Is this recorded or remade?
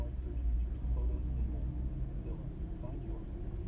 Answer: recorded